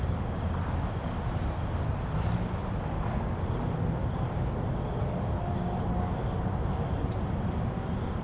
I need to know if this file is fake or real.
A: real